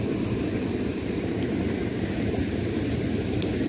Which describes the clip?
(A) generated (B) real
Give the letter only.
B